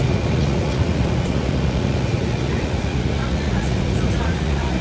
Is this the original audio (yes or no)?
no